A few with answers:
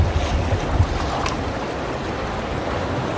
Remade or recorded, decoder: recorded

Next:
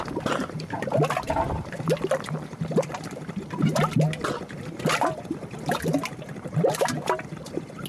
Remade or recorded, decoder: recorded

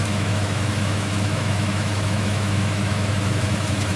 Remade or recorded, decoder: remade, autoencoder, DAC-VAE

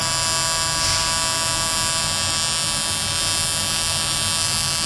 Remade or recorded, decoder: recorded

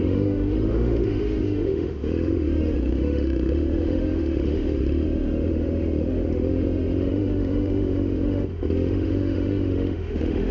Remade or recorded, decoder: remade, autoencoder, DAC-VAE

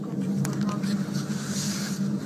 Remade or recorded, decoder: recorded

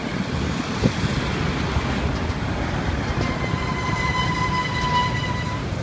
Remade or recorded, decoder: recorded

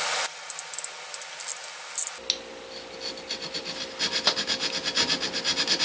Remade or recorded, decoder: recorded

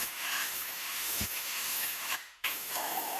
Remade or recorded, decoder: remade, autoencoder, DAC-VAE